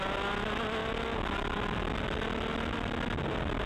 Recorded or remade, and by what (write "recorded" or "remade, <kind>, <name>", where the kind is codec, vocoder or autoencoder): recorded